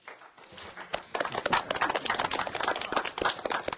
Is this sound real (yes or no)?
yes